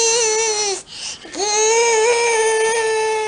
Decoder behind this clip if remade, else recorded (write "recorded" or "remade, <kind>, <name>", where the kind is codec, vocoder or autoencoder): recorded